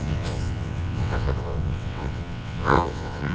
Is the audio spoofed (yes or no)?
yes